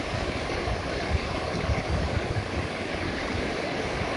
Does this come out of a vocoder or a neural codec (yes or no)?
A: yes